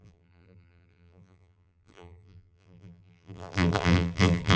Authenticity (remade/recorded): remade